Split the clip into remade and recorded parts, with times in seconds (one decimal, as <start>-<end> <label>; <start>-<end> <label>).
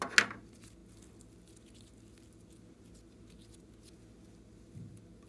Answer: 0.0-5.3 recorded